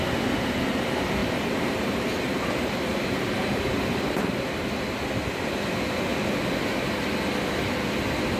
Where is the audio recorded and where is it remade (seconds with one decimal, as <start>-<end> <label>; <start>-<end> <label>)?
0.0-1.2 recorded; 1.2-4.3 remade; 4.3-8.4 recorded